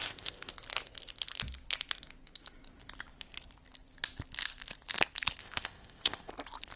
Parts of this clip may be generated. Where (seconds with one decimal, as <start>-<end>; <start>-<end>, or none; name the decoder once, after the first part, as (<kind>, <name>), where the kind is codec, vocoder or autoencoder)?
0.0-0.5 (codec, ZipCodec); 5.4-6.3